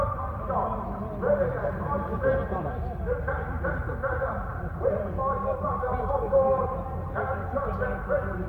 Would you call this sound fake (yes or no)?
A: yes